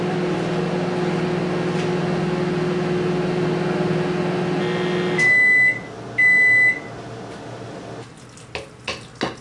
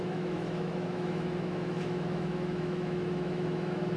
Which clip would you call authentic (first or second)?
first